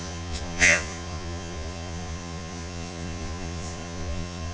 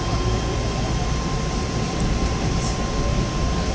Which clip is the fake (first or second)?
first